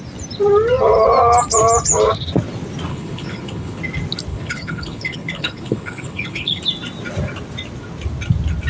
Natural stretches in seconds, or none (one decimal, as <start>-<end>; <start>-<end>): 0.0-2.9; 3.8-4.3; 6.6-8.7